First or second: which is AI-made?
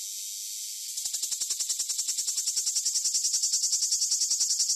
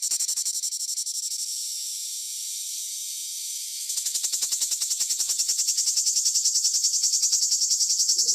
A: second